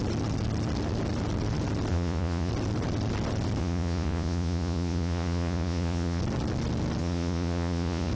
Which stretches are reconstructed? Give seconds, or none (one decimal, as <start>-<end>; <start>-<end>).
1.9-2.5; 3.6-6.2; 7.0-8.1